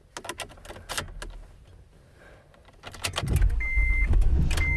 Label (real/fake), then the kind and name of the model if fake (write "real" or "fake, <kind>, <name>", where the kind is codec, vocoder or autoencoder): real